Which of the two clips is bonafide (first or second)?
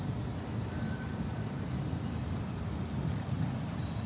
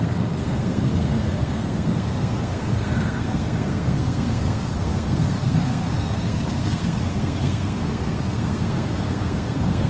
first